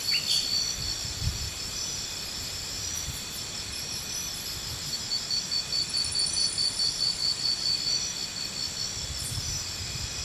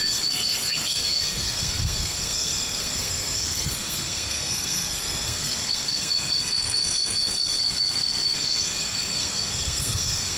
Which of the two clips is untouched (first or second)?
first